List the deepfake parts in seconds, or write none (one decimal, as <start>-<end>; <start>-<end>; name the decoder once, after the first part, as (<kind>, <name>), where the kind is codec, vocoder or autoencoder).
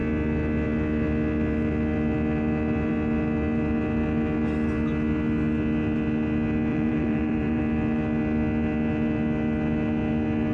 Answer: 6.7-7.6 (vocoder, BigVGAN v2)